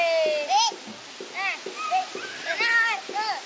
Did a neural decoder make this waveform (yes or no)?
no